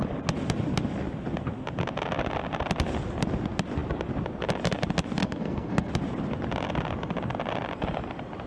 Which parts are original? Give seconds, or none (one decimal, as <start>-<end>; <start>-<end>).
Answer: 0.0-5.2; 5.9-8.5